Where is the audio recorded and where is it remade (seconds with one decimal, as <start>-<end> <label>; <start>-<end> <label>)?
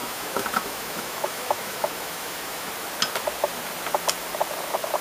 0.0-2.7 remade; 2.7-5.0 recorded